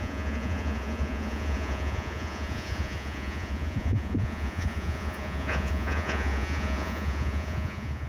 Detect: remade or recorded remade